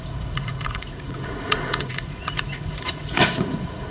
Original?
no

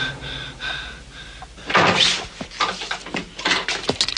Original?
yes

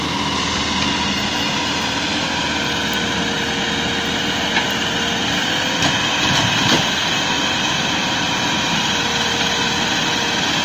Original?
yes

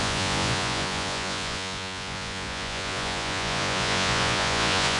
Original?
no